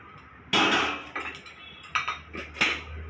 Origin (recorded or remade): recorded